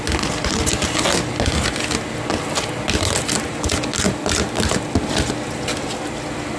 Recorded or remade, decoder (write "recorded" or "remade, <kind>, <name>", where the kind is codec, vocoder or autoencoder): recorded